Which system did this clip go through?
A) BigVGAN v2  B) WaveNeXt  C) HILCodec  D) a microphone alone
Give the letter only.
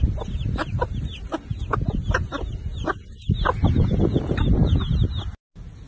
D